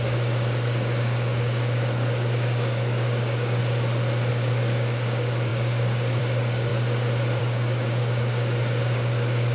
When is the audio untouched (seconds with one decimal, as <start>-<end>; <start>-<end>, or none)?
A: 3.6-4.3; 6.7-7.4